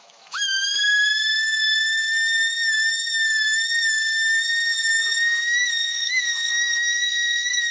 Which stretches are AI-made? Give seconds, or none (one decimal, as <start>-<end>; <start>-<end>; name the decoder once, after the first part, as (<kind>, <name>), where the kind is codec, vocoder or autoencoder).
0.0-7.7 (autoencoder, DAC-VAE)